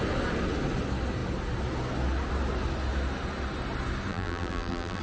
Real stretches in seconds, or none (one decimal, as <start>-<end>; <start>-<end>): 0.0-4.1